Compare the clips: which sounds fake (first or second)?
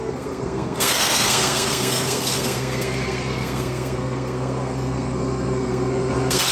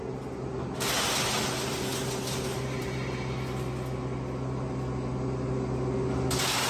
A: first